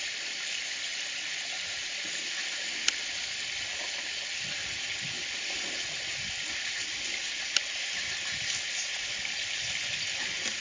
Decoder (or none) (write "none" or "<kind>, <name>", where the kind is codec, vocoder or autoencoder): none